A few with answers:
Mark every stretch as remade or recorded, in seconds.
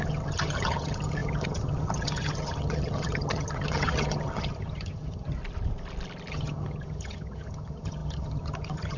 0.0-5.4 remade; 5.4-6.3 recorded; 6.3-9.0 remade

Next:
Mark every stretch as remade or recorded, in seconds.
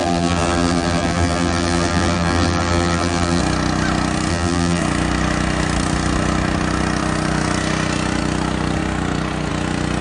0.0-3.4 remade; 3.4-4.3 recorded; 4.3-4.8 remade; 4.8-10.0 recorded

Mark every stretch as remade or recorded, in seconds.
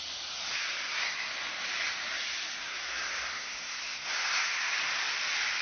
0.0-0.5 recorded; 0.5-1.3 remade; 1.3-2.6 recorded; 2.6-4.7 remade; 4.7-5.6 recorded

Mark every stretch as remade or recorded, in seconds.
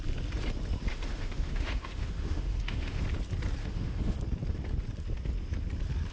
0.0-0.9 recorded; 0.9-3.0 remade; 3.0-3.6 recorded; 3.6-4.2 remade; 4.2-6.1 recorded